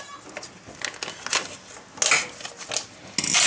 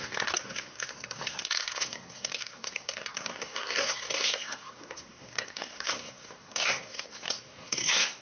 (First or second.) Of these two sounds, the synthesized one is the second